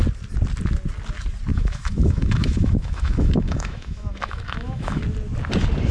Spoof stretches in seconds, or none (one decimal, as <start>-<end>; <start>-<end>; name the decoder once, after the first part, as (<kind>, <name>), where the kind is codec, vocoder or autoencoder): 1.5-5.0 (autoencoder, DAC-VAE)